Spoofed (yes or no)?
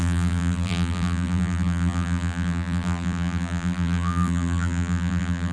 yes